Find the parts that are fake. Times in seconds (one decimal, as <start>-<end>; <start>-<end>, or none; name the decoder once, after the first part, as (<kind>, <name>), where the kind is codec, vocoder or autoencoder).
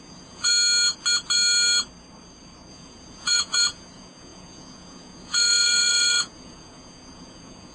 0.0-0.5 (vocoder, Vocos); 2.7-7.7